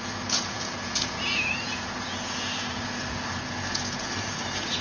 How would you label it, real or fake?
fake